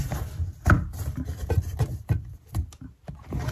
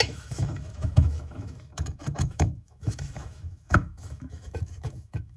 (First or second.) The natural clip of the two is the first